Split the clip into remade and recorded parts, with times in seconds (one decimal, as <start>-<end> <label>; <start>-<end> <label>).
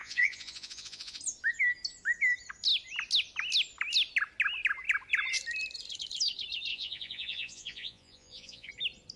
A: 0.0-1.2 remade; 1.2-6.7 recorded; 6.7-8.7 remade; 8.7-9.2 recorded